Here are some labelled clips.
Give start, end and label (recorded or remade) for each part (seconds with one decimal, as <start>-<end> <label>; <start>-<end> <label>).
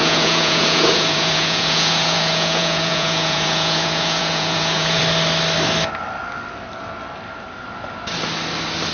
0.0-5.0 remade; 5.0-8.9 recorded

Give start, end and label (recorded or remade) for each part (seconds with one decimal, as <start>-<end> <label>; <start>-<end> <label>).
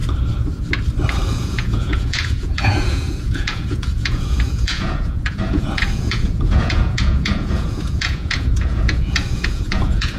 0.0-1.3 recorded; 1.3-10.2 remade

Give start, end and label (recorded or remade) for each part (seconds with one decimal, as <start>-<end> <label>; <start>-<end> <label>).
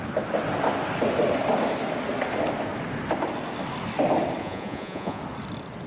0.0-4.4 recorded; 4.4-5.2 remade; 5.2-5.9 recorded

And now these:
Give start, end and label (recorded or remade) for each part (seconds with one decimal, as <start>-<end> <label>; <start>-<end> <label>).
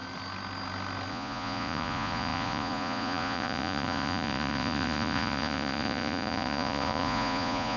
0.0-1.1 recorded; 1.1-7.8 remade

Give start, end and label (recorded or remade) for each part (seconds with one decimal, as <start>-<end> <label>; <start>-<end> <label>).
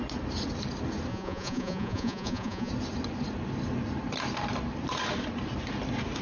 0.0-1.1 recorded; 1.1-2.7 remade; 2.7-6.2 recorded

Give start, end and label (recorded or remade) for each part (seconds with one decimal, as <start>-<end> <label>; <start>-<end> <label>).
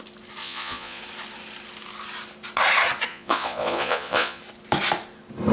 0.0-0.4 recorded; 0.4-1.0 remade; 1.0-3.1 recorded; 3.1-4.4 remade; 4.4-5.5 recorded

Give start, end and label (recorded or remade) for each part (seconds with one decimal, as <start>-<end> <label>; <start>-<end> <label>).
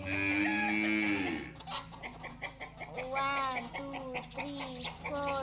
0.0-5.4 recorded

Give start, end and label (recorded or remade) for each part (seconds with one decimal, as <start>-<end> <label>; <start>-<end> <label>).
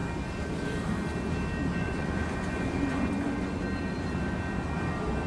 0.0-1.8 recorded; 1.8-3.6 remade; 3.6-5.3 recorded